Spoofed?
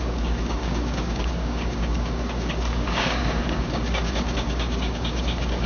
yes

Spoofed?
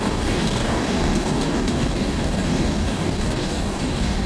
yes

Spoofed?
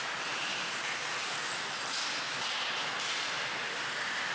no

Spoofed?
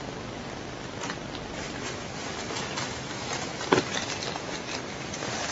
no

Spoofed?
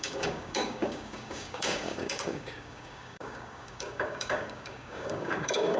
yes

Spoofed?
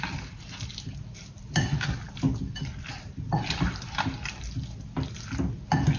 no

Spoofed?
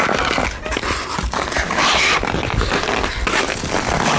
no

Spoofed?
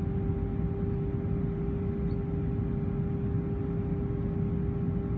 no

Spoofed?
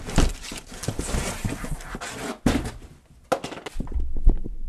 no